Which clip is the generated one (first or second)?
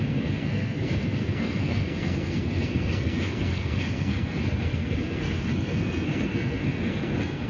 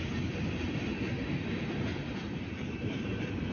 first